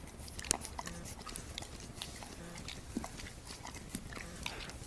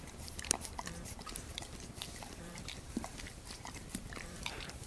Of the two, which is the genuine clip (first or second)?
first